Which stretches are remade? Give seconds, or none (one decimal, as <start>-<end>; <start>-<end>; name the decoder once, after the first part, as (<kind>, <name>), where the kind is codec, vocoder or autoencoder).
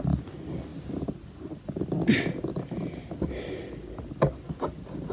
none